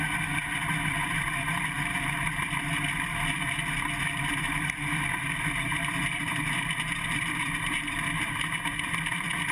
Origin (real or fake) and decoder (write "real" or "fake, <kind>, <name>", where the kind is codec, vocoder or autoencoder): fake, vocoder, BigVGAN v2